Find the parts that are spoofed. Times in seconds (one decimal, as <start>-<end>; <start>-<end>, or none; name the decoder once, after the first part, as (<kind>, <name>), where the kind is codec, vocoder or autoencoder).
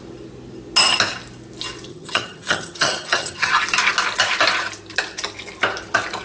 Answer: 1.9-3.5 (vocoder, HiFi-GAN)